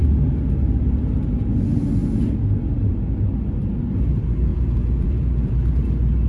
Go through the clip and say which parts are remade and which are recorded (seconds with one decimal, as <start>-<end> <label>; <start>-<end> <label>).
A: 0.0-4.5 recorded; 4.5-5.5 remade; 5.5-6.3 recorded